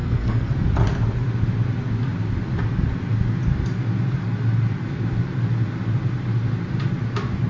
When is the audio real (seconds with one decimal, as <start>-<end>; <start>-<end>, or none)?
0.5-7.5